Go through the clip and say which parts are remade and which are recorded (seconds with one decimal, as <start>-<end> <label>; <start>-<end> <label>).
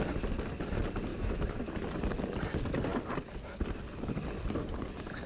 0.0-1.1 recorded; 1.1-1.7 remade; 1.7-5.3 recorded